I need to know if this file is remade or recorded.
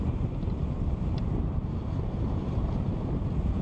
remade